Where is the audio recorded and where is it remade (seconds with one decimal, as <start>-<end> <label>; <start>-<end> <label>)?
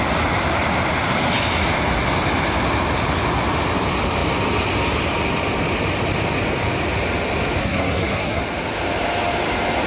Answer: 0.0-7.6 recorded; 7.6-8.4 remade; 8.4-9.9 recorded